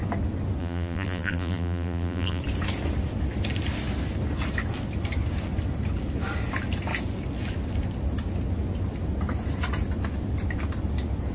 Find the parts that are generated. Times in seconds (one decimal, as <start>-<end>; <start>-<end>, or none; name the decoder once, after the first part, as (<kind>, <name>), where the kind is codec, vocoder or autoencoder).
0.6-2.4 (vocoder, BigVGAN v2)